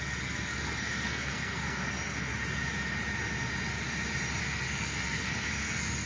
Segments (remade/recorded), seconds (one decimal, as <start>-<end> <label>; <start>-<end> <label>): 0.0-2.3 remade; 2.3-4.4 recorded; 4.4-6.1 remade